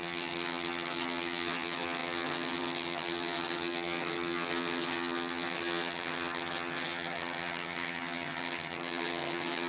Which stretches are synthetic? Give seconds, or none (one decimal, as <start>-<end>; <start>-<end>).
0.0-9.7